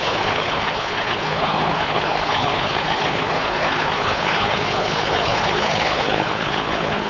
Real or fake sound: fake